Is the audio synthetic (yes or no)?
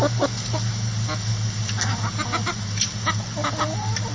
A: no